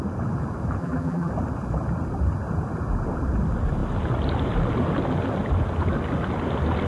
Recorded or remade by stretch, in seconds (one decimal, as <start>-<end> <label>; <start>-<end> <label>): 0.0-0.8 recorded; 0.8-1.3 remade; 1.3-6.9 recorded